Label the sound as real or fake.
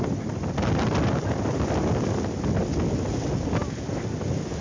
real